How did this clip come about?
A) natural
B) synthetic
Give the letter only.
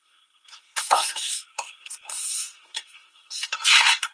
B